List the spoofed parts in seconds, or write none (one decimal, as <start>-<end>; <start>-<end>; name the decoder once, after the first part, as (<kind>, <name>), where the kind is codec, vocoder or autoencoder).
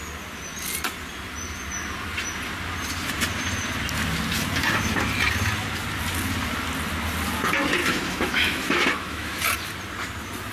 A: 7.8-9.4 (autoencoder, DAC-VAE)